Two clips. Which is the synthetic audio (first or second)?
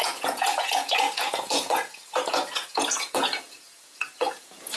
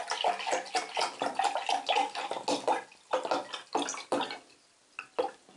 first